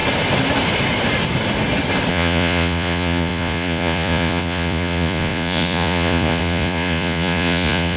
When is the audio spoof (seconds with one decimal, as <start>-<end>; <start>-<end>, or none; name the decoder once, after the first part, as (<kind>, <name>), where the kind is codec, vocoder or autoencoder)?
2.1-8.0 (vocoder, Vocos)